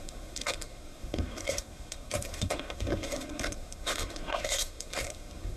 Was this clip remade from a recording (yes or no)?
yes